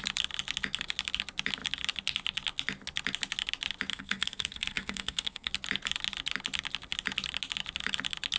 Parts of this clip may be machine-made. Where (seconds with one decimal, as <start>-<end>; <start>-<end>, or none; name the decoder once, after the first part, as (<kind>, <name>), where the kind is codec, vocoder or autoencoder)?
3.9-5.5 (codec, SNAC)